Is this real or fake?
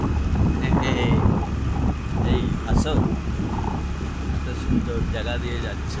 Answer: real